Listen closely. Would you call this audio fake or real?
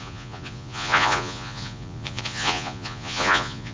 fake